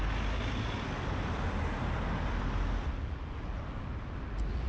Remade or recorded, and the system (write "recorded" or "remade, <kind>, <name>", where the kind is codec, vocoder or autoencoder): recorded